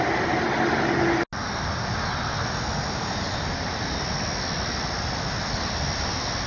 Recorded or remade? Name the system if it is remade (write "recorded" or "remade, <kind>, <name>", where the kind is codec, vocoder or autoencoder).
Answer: recorded